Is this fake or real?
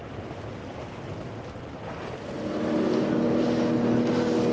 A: real